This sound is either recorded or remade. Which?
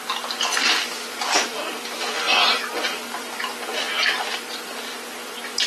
recorded